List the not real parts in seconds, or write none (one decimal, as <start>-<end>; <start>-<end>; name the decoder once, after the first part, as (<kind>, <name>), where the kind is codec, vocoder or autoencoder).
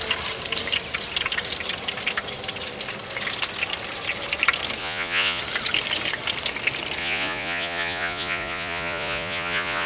4.8-5.4 (vocoder, Vocos); 7.0-9.9